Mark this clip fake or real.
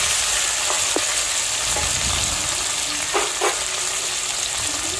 real